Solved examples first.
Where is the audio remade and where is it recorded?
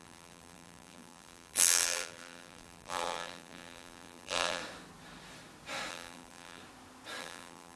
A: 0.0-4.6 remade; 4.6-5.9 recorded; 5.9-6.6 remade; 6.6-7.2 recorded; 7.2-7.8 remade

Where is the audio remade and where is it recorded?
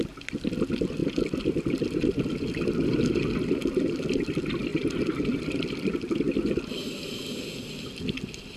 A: 0.0-1.0 recorded; 1.0-2.3 remade; 2.3-8.6 recorded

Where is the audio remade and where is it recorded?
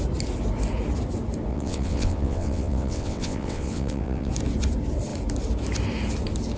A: 0.0-1.5 recorded; 1.5-4.3 remade; 4.3-6.6 recorded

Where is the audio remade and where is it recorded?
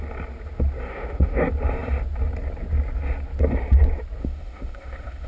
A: 0.0-0.9 recorded; 0.9-1.4 remade; 1.4-4.2 recorded; 4.2-5.3 remade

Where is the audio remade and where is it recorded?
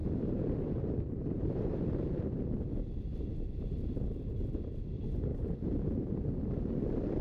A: 0.0-2.2 remade; 2.2-2.7 recorded; 2.7-3.2 remade; 3.2-5.3 recorded; 5.3-6.2 remade; 6.2-7.2 recorded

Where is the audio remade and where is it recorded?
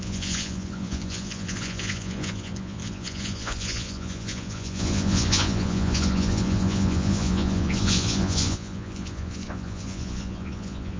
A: 0.0-11.0 remade